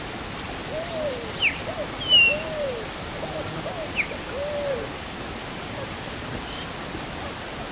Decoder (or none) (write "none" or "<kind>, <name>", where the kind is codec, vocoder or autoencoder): none